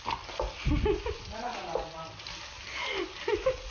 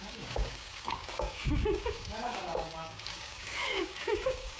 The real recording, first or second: first